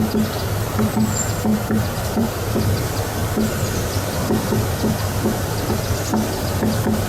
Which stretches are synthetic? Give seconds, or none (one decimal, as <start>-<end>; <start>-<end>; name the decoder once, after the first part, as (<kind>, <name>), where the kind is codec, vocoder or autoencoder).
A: 1.5-2.5 (vocoder, BigVGAN v2)